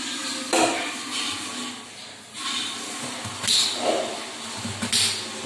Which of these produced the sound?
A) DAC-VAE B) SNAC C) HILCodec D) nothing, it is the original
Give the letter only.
D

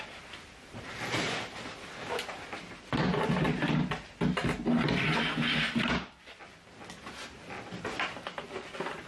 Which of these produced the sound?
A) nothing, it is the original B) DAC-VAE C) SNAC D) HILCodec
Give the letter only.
A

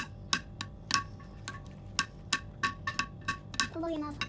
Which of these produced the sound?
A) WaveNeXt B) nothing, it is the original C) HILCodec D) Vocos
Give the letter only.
B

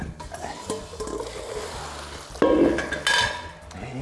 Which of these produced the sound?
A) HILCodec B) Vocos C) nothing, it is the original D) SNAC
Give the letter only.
C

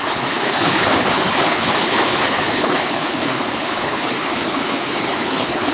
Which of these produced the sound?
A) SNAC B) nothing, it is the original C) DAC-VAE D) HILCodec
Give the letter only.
D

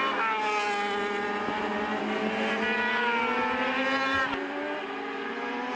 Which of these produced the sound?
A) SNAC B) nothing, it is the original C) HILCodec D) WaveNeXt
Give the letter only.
B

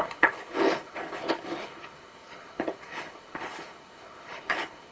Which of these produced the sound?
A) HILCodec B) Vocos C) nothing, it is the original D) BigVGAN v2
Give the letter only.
A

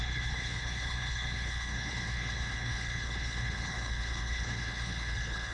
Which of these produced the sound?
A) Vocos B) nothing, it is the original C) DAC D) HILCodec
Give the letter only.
D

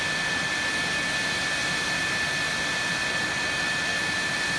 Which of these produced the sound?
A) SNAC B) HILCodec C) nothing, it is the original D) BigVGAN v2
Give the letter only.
C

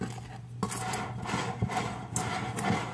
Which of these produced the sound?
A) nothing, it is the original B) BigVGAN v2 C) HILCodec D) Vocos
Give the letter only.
A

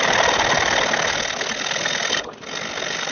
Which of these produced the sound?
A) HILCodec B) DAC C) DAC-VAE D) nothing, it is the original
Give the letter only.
D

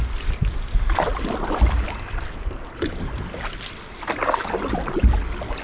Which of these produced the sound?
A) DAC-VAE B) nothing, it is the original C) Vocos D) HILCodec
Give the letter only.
B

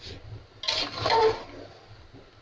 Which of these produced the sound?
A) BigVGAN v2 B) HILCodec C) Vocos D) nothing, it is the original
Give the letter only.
D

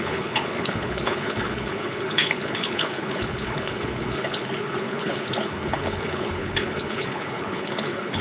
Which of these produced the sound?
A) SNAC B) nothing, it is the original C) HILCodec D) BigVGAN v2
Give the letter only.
C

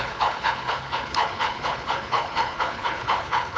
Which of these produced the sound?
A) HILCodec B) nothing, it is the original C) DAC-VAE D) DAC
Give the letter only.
A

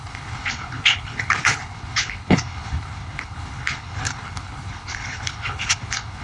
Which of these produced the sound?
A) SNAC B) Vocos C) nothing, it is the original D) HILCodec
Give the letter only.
D